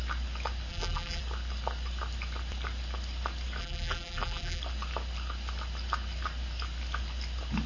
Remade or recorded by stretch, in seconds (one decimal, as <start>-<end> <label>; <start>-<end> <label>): 0.0-0.7 recorded; 0.7-1.2 remade; 1.2-3.6 recorded; 3.6-4.6 remade; 4.6-7.7 recorded